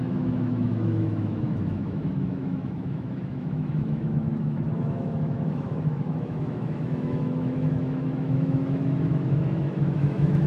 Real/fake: fake